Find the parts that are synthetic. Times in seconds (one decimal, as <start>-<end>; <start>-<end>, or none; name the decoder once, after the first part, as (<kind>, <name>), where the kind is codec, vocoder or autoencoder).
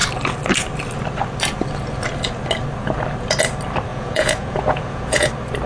3.9-5.3 (vocoder, Vocos)